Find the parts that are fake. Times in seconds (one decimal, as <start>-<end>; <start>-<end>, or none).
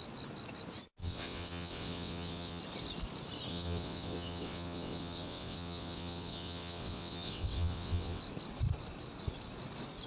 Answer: 1.0-2.6; 3.5-8.2